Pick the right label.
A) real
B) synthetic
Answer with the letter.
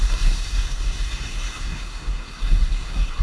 B